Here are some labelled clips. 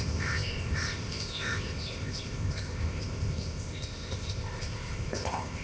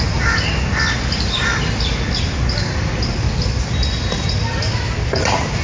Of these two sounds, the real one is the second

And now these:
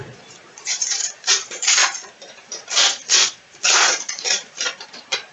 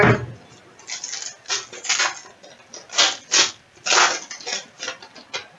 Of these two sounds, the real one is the second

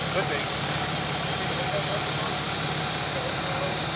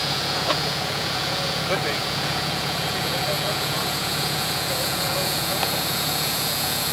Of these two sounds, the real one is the first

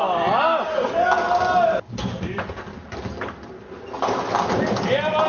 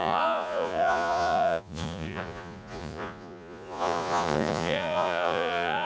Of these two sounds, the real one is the first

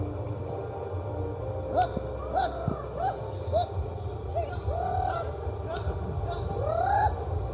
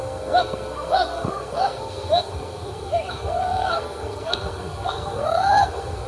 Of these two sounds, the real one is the first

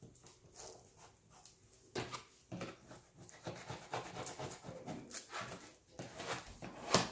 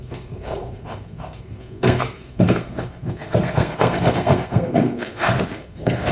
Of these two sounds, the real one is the first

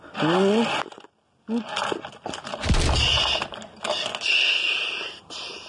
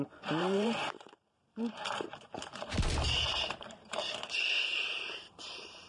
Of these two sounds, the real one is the first